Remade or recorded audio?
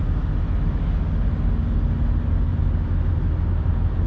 recorded